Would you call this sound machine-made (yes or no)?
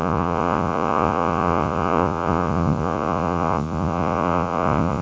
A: yes